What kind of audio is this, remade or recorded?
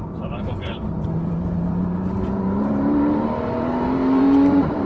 remade